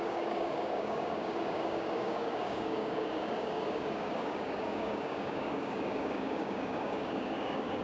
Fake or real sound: fake